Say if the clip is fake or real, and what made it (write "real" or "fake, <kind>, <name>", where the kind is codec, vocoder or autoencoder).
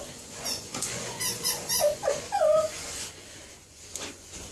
fake, vocoder, Vocos